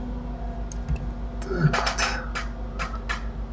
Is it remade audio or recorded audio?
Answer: recorded